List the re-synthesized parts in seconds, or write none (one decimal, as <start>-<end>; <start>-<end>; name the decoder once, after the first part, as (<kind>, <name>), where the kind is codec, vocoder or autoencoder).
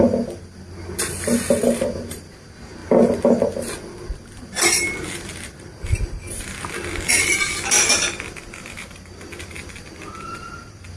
none